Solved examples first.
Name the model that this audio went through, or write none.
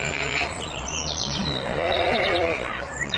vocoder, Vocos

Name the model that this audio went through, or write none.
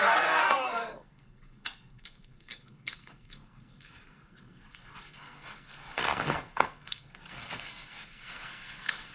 codec, SNAC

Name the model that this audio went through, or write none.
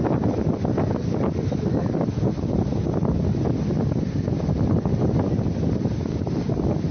none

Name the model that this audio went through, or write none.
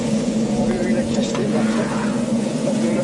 vocoder, Vocos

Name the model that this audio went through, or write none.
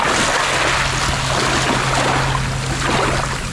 none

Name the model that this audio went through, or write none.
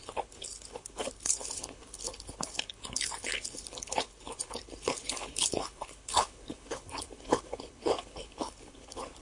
codec, HILCodec